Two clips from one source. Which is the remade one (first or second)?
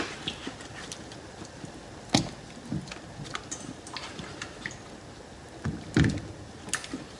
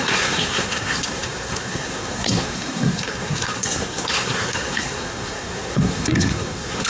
second